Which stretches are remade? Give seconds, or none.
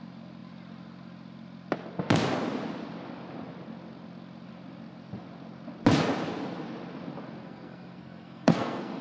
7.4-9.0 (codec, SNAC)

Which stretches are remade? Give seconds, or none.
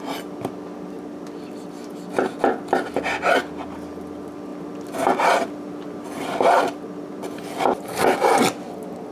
none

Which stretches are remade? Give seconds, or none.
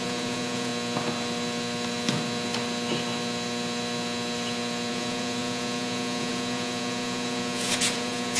0.0-0.7 (vocoder, Vocos); 4.9-8.4